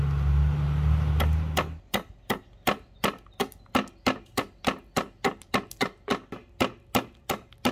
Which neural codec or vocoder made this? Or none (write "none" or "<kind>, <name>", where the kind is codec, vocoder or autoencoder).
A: none